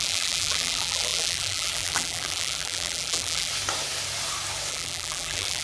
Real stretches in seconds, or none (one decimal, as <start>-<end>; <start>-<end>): 3.5-4.7